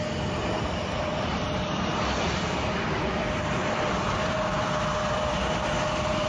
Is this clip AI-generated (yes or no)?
yes